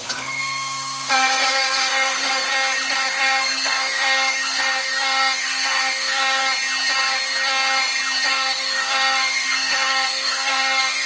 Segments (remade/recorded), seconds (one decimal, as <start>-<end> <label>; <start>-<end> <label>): 0.0-2.5 remade; 2.5-3.1 recorded; 3.1-6.4 remade; 6.4-8.3 recorded; 8.3-11.1 remade